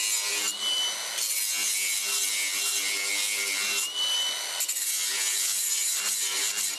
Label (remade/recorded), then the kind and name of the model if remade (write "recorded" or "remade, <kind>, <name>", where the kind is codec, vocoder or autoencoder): recorded